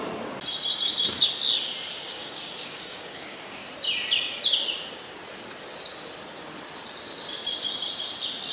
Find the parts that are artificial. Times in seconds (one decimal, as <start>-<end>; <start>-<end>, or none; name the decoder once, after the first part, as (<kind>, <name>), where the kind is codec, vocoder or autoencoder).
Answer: 2.1-3.7 (codec, DAC)